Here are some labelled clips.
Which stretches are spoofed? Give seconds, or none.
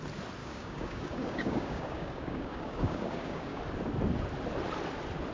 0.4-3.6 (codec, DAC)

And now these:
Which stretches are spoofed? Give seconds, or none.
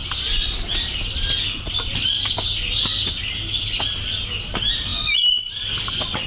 none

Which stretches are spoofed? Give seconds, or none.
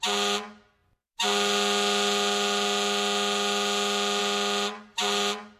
none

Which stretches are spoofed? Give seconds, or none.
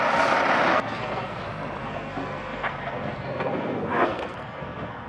0.7-1.4 (codec, SNAC); 1.8-5.1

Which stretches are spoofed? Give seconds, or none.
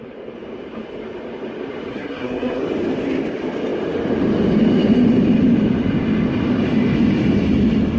1.9-2.6 (codec, SNAC)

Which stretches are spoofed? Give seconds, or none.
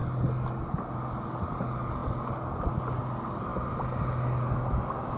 none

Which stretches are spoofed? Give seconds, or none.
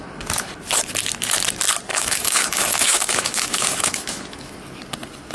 1.9-4.6 (autoencoder, DAC-VAE)